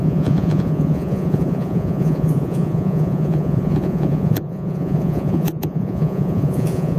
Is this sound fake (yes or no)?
yes